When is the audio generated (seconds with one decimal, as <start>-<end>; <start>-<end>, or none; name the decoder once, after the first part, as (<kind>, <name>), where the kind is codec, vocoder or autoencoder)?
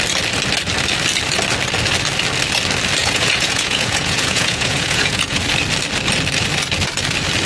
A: 3.0-5.4 (vocoder, Vocos)